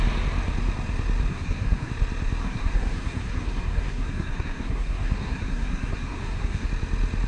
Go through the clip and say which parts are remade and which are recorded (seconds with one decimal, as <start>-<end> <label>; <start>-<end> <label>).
0.0-1.3 recorded; 1.3-1.9 remade; 1.9-2.4 recorded; 2.4-6.7 remade; 6.7-7.3 recorded